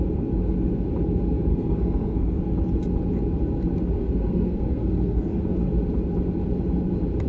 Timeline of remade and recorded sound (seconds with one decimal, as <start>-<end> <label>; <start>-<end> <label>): 0.0-1.5 recorded; 1.5-2.4 remade; 2.4-4.0 recorded; 4.0-5.4 remade; 5.4-7.3 recorded